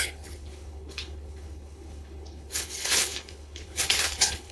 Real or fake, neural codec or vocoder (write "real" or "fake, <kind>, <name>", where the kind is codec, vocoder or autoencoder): fake, codec, HILCodec